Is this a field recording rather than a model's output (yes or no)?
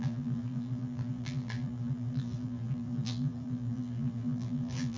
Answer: no